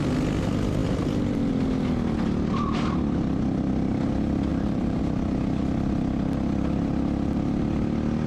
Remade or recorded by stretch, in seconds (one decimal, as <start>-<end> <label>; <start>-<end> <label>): 0.0-4.5 recorded; 4.5-5.0 remade; 5.0-8.3 recorded